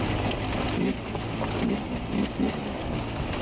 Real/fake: real